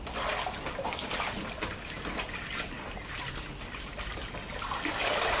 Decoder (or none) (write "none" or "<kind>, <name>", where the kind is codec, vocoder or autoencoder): none